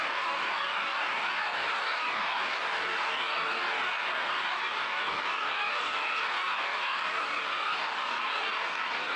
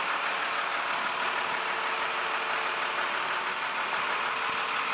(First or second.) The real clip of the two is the second